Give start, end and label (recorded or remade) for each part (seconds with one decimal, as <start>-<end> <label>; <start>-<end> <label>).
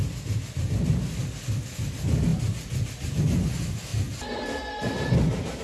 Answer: 0.0-5.6 recorded